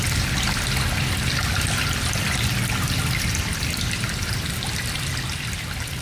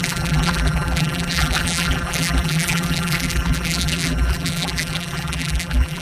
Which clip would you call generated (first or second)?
second